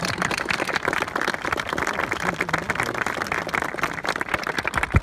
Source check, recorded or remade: recorded